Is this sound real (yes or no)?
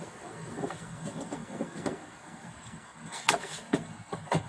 no